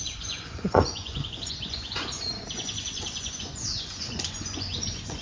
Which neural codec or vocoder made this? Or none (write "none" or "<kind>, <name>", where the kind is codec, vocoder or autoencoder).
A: vocoder, Vocos